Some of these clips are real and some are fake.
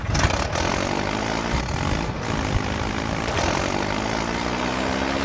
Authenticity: real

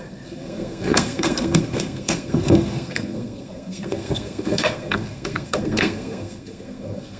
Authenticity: fake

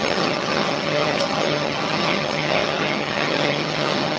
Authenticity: fake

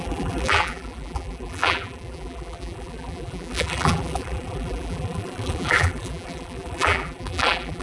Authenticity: fake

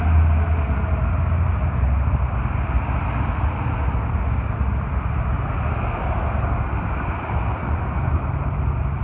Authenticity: real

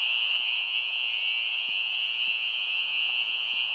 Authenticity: fake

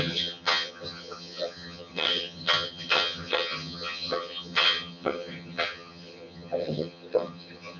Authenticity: fake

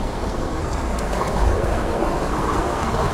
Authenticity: fake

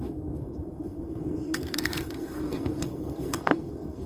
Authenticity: fake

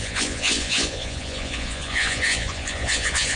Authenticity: fake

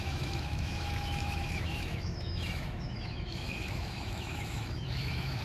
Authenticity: fake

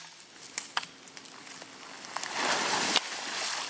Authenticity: real